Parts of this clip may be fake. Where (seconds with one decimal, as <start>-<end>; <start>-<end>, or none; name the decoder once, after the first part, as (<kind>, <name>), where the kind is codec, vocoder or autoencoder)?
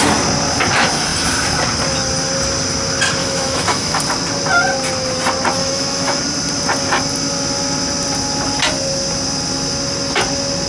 3.2-4.0 (autoencoder, DAC-VAE); 5.6-6.2